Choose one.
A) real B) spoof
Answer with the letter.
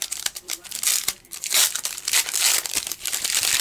B